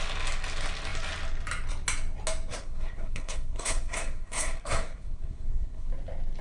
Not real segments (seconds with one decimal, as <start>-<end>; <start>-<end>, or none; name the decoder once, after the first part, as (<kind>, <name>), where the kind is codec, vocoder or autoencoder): 2.5-5.9 (codec, SNAC)